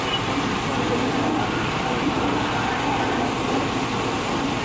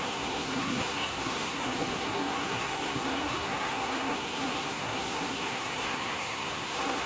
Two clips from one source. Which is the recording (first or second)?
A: first